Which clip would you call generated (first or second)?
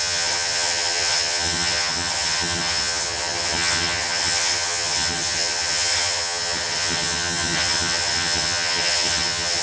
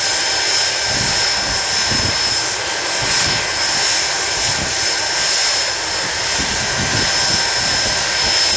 first